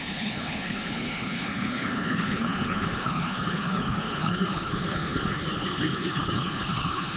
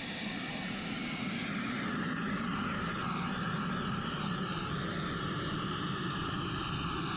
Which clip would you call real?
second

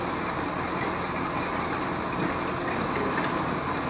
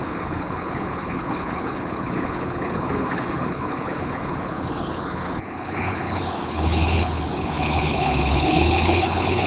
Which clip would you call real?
first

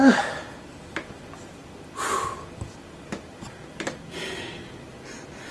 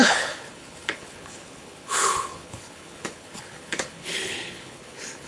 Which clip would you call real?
first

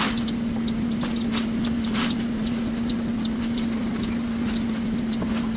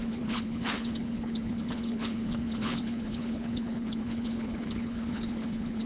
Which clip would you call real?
first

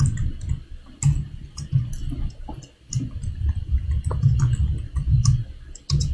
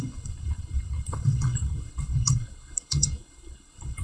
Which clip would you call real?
first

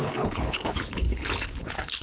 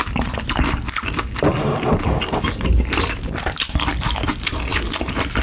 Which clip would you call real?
second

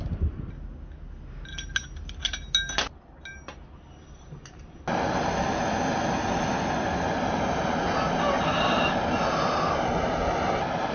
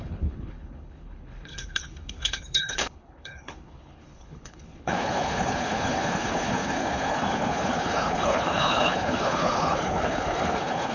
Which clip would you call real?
first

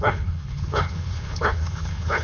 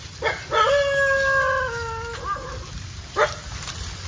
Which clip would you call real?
second